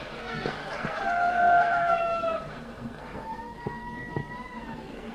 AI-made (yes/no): yes